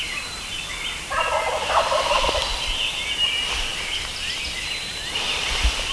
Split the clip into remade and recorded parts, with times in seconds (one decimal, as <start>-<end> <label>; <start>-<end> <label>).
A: 0.0-5.9 recorded

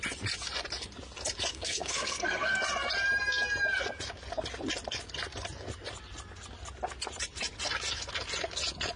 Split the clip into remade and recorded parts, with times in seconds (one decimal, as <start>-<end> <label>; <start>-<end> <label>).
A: 0.0-1.5 recorded; 1.5-2.6 remade; 2.6-9.0 recorded